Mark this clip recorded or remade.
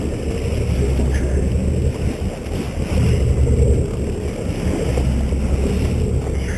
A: recorded